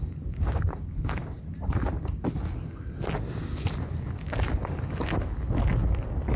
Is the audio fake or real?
real